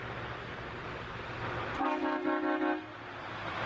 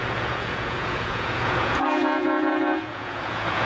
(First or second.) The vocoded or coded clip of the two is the second